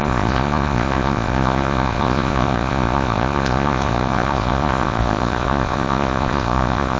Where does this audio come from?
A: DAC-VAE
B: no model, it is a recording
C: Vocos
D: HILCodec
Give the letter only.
C